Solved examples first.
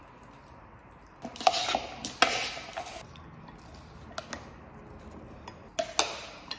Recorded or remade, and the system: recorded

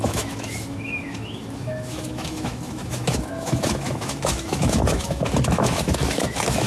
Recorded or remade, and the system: remade, autoencoder, DAC-VAE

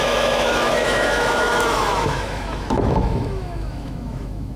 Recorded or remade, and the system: remade, autoencoder, DAC-VAE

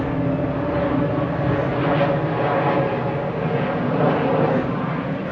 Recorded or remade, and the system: recorded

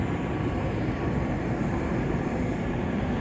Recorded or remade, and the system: remade, vocoder, BigVGAN v2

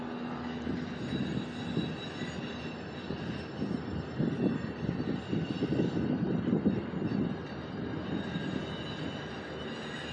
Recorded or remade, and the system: recorded